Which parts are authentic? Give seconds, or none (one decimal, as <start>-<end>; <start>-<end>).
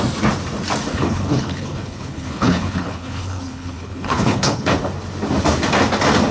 0.0-0.9; 4.7-6.3